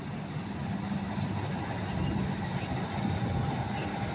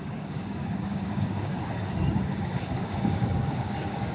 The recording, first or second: first